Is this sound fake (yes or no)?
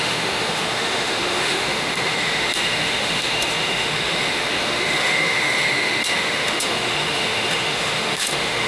yes